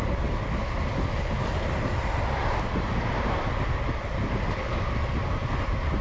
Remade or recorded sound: recorded